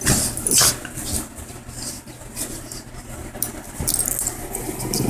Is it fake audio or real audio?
real